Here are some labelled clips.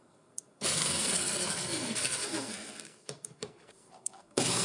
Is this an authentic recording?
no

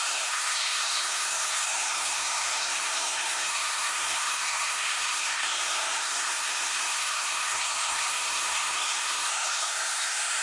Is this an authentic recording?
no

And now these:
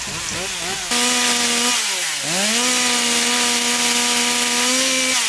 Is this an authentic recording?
yes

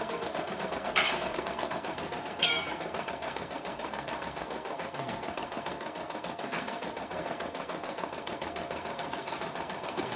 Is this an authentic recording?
no